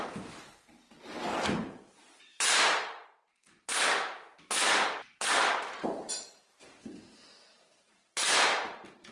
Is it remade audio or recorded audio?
remade